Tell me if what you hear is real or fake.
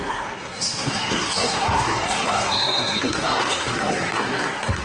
fake